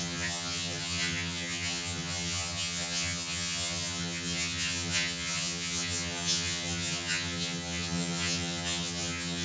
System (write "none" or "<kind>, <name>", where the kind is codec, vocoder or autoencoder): vocoder, HiFi-GAN